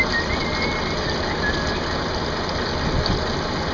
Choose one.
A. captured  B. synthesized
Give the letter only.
A